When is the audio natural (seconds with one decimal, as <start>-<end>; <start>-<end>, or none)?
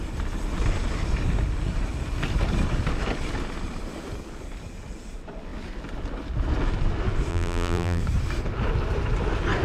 0.0-7.3; 8.0-9.6